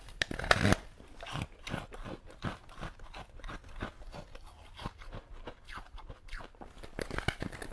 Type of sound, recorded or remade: recorded